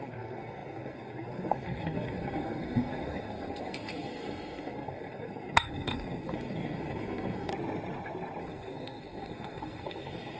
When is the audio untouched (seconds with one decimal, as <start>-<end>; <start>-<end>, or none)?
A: 7.5-8.4